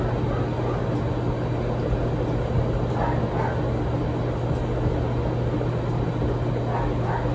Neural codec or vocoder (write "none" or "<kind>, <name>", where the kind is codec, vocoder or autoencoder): none